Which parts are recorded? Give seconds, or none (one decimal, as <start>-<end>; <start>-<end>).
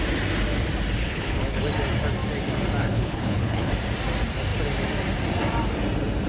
0.0-1.0; 1.6-2.8; 3.7-6.3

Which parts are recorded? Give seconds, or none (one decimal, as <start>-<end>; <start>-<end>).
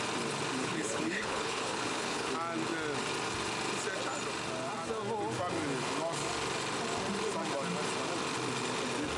0.0-0.6; 2.3-9.2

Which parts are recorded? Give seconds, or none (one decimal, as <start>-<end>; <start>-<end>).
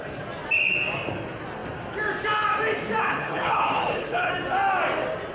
0.0-3.0; 4.3-5.3